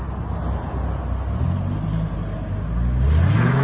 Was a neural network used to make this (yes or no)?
no